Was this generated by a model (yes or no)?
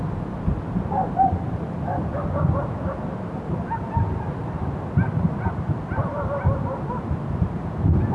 no